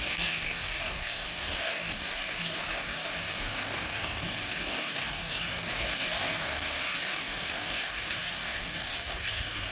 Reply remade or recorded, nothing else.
remade